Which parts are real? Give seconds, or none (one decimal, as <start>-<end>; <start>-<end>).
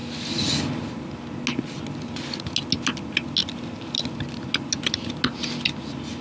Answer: 0.0-6.2